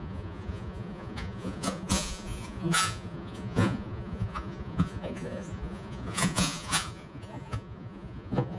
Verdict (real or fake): fake